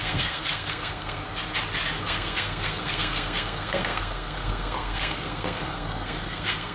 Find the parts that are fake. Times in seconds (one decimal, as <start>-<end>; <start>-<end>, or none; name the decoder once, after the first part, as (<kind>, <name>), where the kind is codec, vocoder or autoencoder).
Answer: 0.0-1.2 (codec, SNAC); 2.0-6.7